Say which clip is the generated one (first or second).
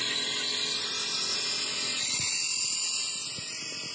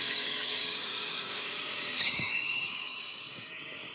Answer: second